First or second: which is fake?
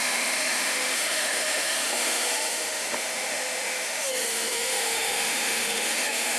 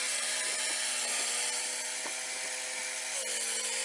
first